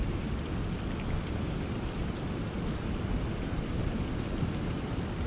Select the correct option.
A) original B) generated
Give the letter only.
A